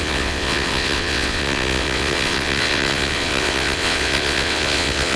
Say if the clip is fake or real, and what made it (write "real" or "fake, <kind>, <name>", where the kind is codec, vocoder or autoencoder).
fake, vocoder, WaveNeXt